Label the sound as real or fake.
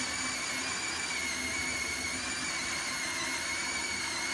real